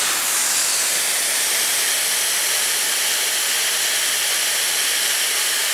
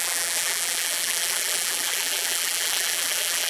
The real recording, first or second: first